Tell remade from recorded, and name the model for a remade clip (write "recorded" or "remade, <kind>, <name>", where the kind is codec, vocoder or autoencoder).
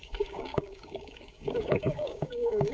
remade, codec, DAC